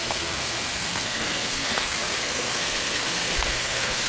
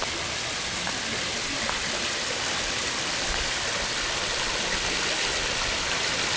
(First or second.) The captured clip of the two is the second